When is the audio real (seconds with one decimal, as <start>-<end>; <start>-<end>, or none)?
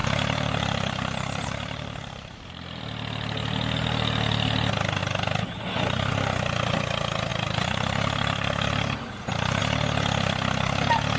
2.8-7.3; 9.6-11.2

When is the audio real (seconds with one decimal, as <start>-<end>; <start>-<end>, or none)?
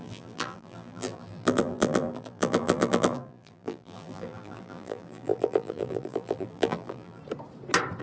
7.2-8.0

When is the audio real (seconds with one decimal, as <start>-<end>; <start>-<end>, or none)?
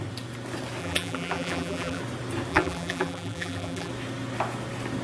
0.0-0.8; 2.0-2.5; 3.9-5.0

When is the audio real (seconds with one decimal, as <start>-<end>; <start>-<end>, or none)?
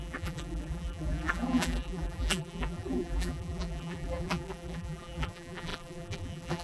none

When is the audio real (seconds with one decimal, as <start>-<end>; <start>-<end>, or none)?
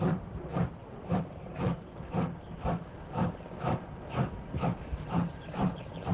0.5-1.2; 1.7-5.4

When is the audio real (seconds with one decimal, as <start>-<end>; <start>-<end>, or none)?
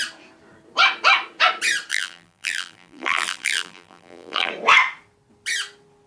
0.0-1.9; 4.5-6.1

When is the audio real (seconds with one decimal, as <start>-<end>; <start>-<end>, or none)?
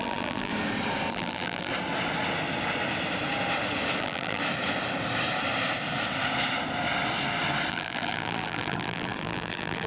0.5-1.1; 1.7-4.0; 4.4-7.7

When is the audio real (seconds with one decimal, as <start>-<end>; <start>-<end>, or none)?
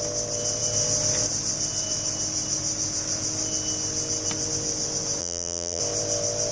0.0-5.2; 5.8-6.5